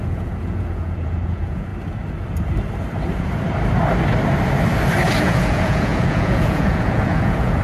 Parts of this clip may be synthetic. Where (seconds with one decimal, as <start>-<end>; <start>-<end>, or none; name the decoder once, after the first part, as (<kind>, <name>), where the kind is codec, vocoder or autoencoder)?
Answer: 0.0-1.7 (vocoder, Vocos); 5.2-7.6